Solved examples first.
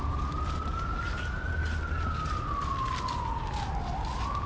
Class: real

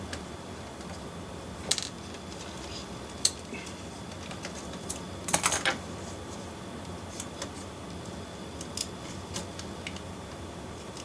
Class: real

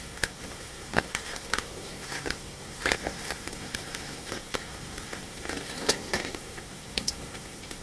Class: fake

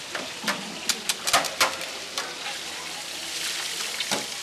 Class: real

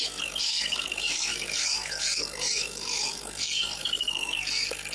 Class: fake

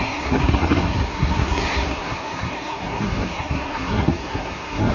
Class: fake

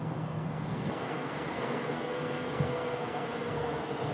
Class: fake